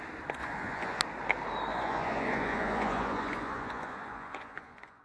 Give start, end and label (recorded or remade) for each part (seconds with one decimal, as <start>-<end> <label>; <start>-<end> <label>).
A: 0.0-0.4 recorded; 0.4-1.0 remade; 1.0-1.7 recorded; 1.7-5.0 remade